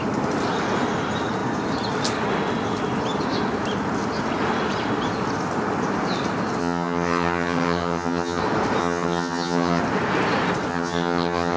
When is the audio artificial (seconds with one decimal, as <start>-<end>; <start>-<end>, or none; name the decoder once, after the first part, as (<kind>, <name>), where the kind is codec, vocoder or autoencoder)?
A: 6.6-8.4 (vocoder, HiFi-GAN); 8.8-9.8; 10.7-11.6